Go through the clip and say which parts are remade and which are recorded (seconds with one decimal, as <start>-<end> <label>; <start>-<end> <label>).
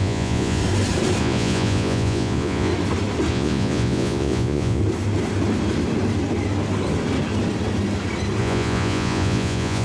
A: 0.0-0.6 remade; 0.6-1.2 recorded; 1.2-2.7 remade; 2.7-3.3 recorded; 3.3-4.8 remade; 4.8-8.4 recorded; 8.4-9.8 remade